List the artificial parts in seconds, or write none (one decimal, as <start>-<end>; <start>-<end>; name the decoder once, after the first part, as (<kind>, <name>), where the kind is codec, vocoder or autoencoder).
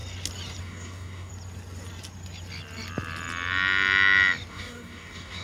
0.6-1.3 (codec, DAC); 4.5-5.4